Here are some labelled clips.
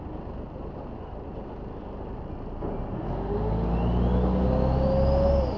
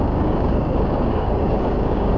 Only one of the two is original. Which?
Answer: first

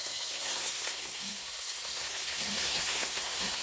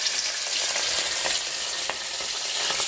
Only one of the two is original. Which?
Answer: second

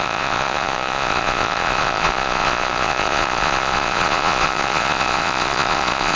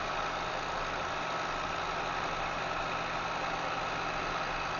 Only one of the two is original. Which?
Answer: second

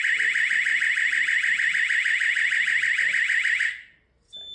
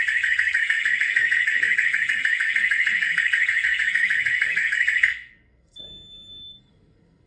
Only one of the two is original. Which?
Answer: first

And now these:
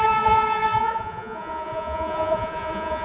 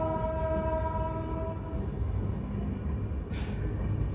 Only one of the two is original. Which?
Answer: second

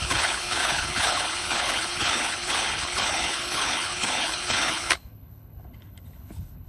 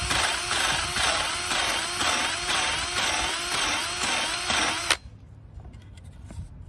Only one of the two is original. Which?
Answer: second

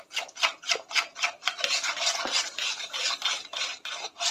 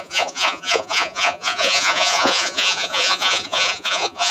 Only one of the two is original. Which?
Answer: first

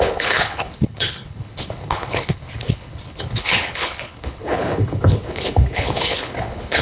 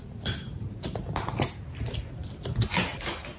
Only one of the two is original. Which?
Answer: second